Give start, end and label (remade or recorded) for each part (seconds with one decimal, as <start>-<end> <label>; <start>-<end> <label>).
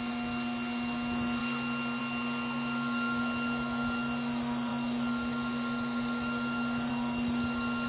0.0-7.9 recorded